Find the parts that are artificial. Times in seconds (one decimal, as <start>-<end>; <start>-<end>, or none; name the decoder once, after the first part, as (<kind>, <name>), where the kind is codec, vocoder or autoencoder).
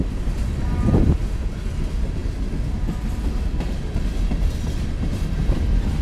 none